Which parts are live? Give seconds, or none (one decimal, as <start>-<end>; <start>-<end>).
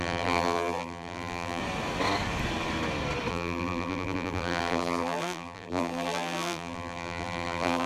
1.6-3.3